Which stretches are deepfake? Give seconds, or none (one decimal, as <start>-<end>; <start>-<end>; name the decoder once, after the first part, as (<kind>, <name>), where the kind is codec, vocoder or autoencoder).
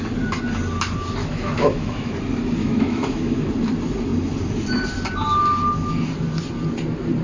1.2-2.1 (autoencoder, DAC-VAE); 2.6-3.5